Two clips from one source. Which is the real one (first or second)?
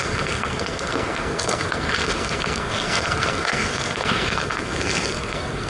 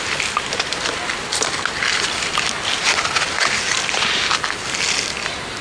second